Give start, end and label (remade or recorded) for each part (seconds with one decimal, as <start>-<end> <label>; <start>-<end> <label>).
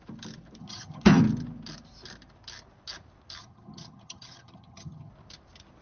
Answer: 0.0-0.6 recorded; 0.6-1.2 remade; 1.2-3.4 recorded; 3.4-5.1 remade; 5.1-5.8 recorded